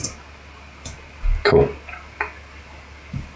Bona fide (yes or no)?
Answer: yes